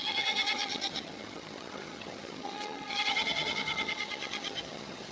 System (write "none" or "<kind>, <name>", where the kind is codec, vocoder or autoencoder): vocoder, HiFi-GAN